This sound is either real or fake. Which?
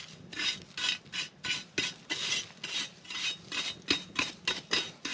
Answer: real